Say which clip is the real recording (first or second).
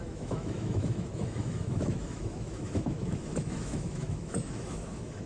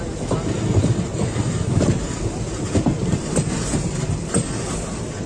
second